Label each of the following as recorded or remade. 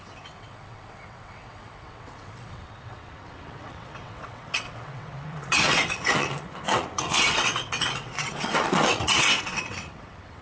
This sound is remade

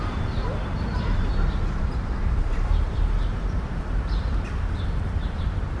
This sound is remade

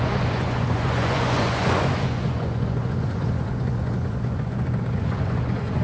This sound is remade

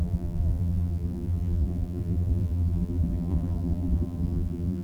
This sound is remade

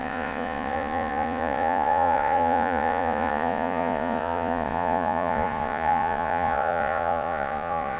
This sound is remade